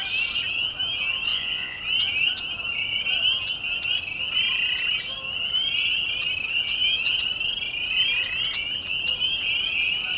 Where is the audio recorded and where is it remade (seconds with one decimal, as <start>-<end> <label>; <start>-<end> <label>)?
0.0-1.3 recorded; 1.3-1.8 remade; 1.8-10.2 recorded